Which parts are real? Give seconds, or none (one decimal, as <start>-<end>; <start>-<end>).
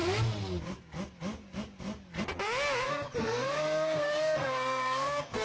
0.0-3.2